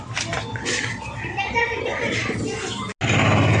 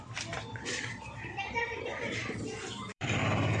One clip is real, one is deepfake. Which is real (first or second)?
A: first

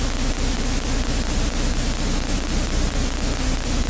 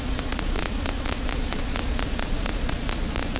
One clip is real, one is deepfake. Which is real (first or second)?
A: first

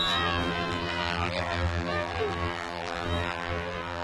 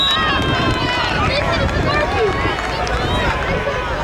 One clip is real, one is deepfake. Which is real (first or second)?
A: second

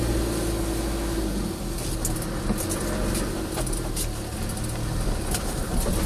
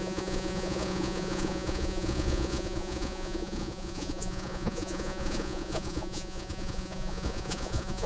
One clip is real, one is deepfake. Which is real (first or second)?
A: first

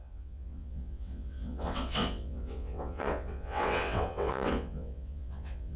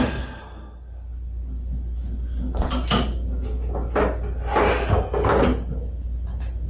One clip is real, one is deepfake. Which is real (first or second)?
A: second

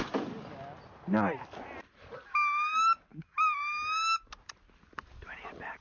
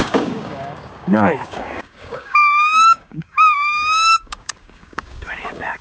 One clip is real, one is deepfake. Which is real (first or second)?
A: first